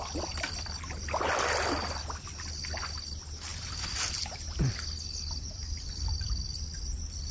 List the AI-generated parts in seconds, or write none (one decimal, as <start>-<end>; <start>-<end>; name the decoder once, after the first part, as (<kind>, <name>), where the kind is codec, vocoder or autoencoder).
none